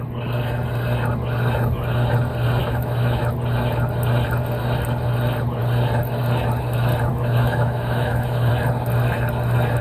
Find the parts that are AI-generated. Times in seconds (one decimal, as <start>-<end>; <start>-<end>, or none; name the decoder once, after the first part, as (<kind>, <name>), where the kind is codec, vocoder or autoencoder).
2.6-3.2 (autoencoder, DAC-VAE); 7.1-8.5